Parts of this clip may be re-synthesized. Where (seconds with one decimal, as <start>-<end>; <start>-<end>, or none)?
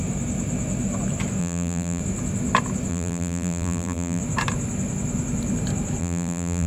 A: 1.4-2.0; 2.9-4.2; 6.0-6.7